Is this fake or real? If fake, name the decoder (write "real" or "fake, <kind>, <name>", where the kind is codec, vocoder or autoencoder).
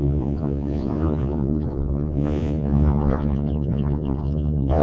fake, vocoder, Vocos